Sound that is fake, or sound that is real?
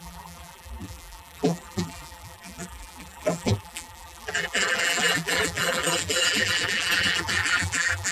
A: fake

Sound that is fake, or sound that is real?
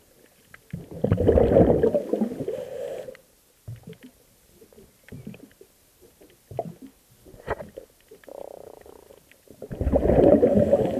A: real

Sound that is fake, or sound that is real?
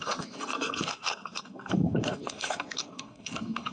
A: fake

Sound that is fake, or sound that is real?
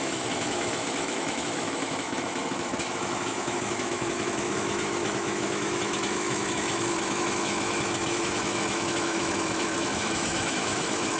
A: fake